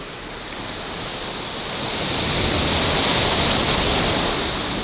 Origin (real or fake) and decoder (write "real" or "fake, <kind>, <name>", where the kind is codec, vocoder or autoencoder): real